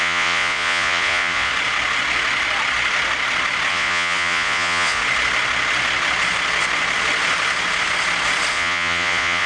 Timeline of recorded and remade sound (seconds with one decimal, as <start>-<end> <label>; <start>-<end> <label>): 0.0-1.5 remade; 1.5-3.7 recorded; 3.7-5.0 remade; 5.0-8.5 recorded; 8.5-9.5 remade